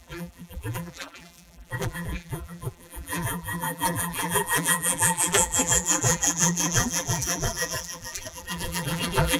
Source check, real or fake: fake